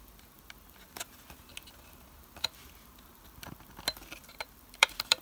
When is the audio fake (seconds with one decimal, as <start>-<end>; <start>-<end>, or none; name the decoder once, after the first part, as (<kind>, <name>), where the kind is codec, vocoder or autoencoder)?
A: 4.2-5.2 (vocoder, BigVGAN v2)